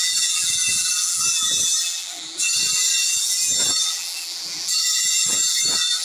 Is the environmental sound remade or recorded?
remade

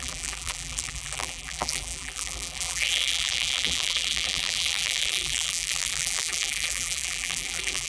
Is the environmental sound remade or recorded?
remade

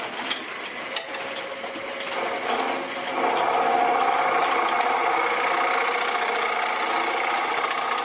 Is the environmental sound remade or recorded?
recorded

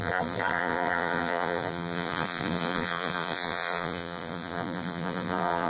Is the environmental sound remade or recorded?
remade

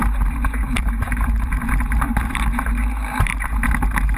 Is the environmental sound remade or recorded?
remade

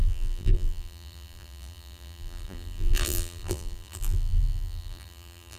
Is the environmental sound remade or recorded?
remade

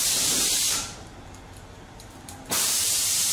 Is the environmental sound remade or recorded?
remade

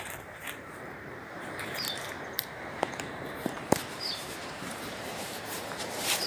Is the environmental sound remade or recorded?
remade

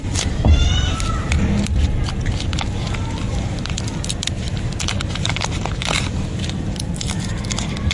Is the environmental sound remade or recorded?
remade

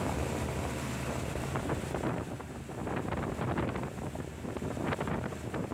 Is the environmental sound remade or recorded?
remade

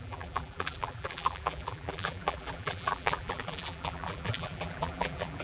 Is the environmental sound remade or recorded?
remade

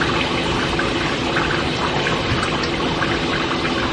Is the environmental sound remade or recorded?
recorded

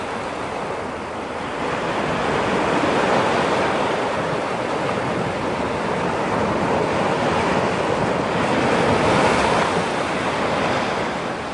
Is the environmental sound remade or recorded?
recorded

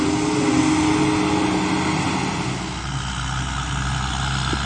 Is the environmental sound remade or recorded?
recorded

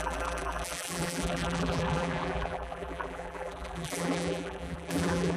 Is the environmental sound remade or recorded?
remade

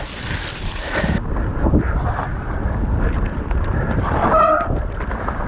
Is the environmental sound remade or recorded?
remade